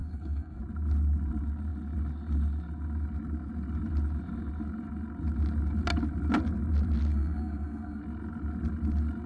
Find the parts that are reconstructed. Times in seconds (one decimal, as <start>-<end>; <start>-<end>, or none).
0.0-0.6; 7.1-8.0